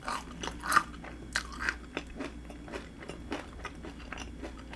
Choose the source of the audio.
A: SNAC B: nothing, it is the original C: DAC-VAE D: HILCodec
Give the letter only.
B